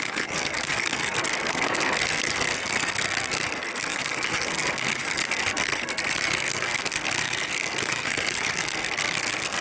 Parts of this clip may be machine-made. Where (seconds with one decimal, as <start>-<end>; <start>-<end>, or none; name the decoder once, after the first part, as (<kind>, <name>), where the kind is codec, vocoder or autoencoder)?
0.0-9.6 (codec, SNAC)